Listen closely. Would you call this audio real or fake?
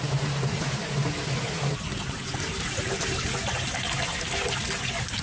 real